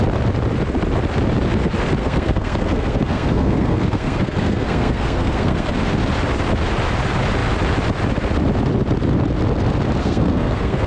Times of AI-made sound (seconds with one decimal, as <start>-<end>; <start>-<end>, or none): 2.0-5.7; 10.0-10.9